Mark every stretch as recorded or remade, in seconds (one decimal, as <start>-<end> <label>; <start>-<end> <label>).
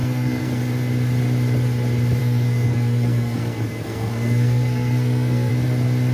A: 0.0-0.6 remade; 0.6-2.2 recorded; 2.2-5.5 remade; 5.5-6.1 recorded